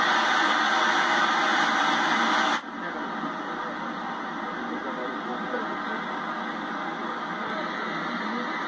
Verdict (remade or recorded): recorded